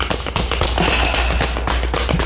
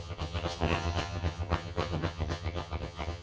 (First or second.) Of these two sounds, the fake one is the second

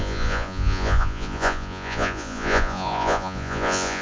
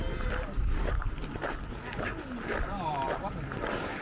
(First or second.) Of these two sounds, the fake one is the first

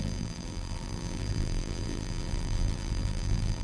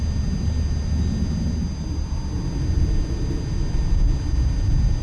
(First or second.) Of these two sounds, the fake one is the first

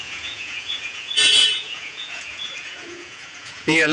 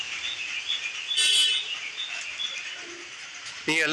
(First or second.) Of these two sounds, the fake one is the first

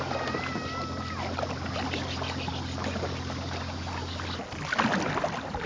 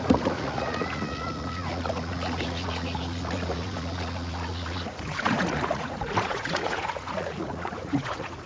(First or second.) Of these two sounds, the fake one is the second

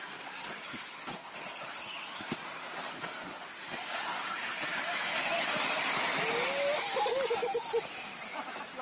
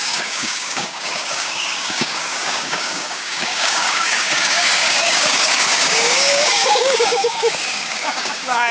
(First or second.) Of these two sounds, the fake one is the second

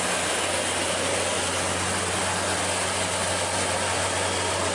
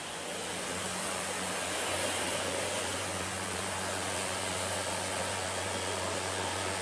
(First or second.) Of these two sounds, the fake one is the second